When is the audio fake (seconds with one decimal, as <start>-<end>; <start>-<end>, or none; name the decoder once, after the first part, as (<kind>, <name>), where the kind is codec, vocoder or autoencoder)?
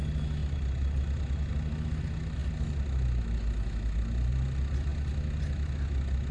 0.4-1.5 (vocoder, BigVGAN v2)